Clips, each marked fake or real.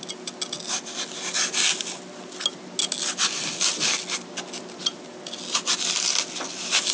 real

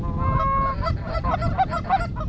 real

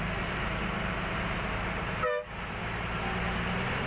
real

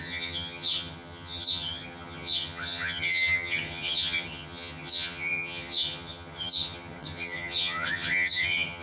fake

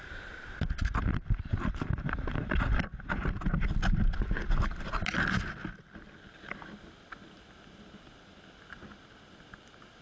real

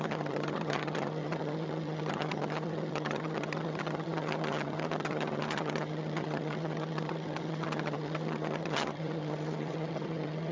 fake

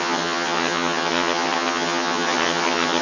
fake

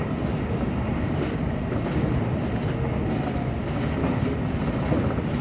real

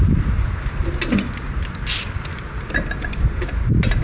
real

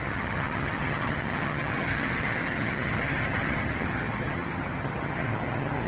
fake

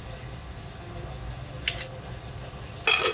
real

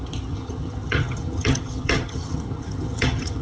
fake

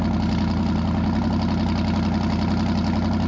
real